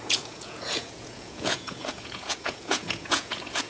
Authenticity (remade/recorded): remade